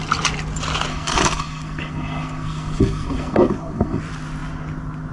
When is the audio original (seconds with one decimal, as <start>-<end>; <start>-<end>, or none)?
0.0-0.9; 4.0-5.1